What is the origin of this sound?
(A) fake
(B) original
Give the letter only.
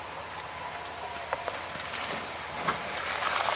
B